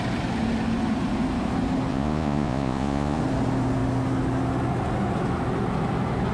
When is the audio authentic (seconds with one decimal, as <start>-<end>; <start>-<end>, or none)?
0.0-1.9; 3.2-6.3